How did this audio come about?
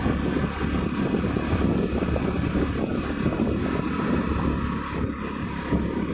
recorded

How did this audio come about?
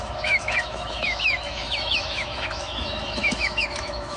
remade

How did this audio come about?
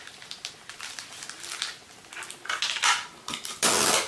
recorded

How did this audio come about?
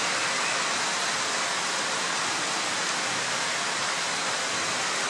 recorded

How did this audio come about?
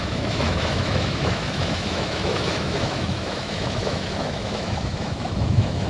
remade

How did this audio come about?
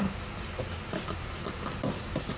recorded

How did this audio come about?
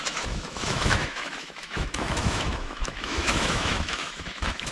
remade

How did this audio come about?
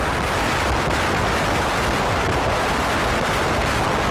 recorded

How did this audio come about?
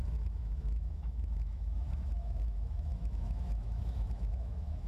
remade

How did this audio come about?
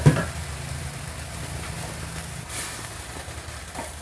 recorded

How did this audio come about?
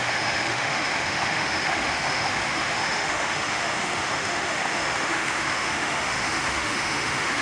remade